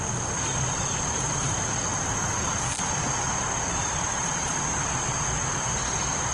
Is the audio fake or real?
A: real